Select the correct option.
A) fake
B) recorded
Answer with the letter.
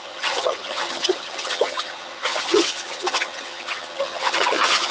A